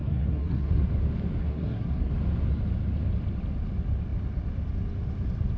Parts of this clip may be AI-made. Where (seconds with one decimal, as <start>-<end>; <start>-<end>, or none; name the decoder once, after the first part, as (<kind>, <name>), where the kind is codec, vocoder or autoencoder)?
0.0-0.8 (codec, SNAC); 1.4-2.1